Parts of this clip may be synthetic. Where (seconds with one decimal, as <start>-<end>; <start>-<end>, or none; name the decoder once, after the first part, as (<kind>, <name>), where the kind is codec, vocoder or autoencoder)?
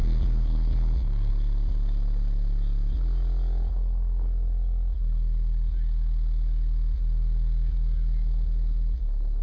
0.0-1.3 (codec, SNAC)